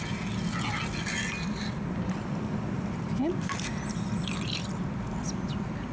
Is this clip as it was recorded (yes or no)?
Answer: yes